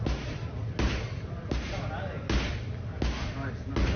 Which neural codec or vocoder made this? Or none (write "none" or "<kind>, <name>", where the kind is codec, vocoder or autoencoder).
none